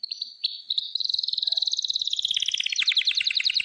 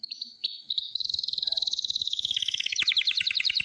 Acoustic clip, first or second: first